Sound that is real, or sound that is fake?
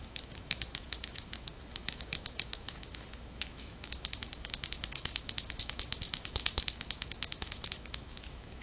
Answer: fake